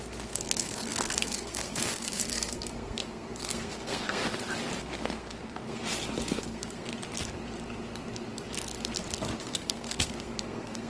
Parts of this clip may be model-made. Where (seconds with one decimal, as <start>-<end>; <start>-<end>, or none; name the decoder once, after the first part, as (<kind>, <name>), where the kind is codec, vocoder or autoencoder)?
0.0-4.2 (codec, SNAC); 4.8-5.8; 6.4-6.9; 9.4-10.9